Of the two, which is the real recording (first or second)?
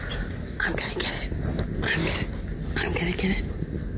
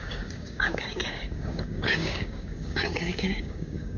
first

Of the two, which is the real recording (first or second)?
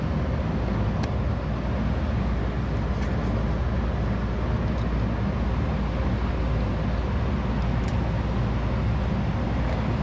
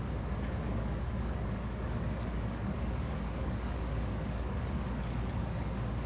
first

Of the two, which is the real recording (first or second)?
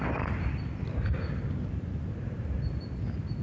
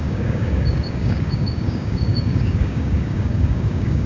first